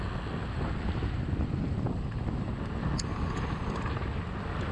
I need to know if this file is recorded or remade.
recorded